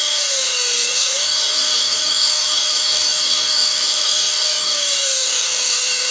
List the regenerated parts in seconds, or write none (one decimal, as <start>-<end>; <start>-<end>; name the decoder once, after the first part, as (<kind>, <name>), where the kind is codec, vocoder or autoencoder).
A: 0.0-6.1 (codec, DAC)